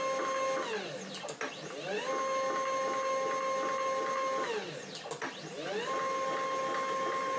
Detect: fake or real real